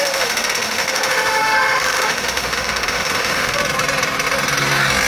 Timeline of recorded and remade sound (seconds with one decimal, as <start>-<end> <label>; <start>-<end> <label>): 0.0-3.6 remade; 3.6-5.1 recorded